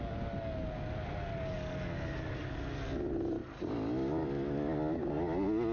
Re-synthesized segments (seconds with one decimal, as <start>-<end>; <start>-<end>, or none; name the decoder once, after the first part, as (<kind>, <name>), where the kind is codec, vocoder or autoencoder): none